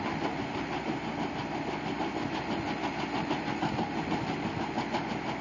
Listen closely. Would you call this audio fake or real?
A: real